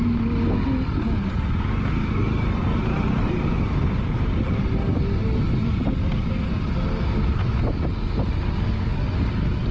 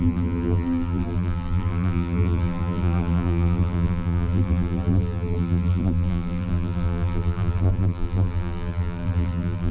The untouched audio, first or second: first